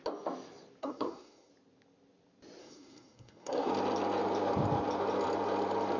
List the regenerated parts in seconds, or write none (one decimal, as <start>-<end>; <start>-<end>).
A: 0.8-1.5; 2.6-3.7